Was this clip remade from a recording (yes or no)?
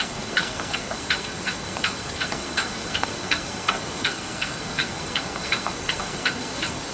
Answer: yes